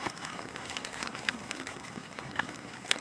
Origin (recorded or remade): remade